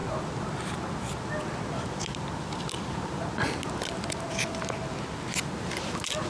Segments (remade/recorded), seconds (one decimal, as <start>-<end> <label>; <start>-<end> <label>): 0.0-6.3 recorded